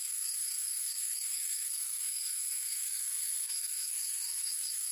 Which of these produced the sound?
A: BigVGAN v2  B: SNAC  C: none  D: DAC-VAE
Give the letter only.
B